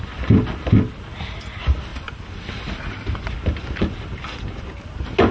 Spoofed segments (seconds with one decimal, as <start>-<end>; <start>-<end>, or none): none